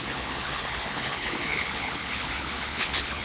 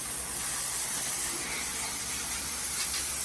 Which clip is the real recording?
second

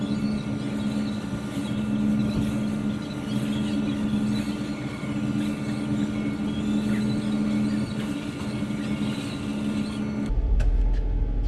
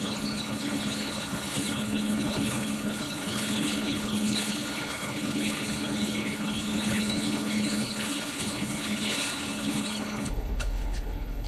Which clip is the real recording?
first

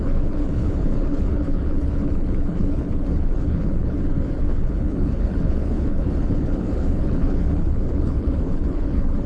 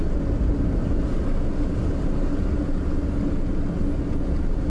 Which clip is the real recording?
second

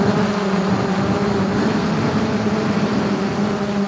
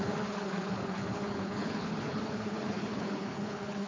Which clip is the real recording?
first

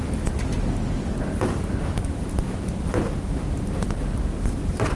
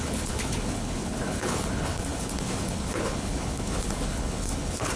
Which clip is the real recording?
first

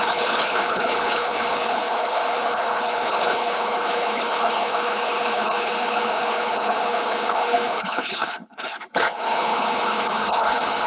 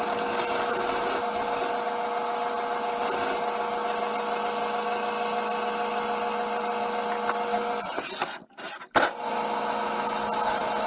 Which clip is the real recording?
second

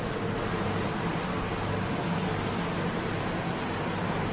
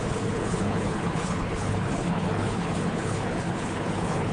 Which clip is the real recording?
first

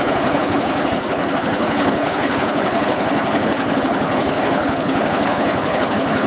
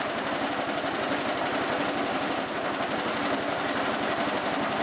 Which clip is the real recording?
second